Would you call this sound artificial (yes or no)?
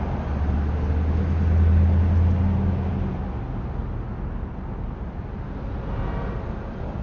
no